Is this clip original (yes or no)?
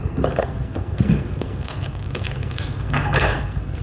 no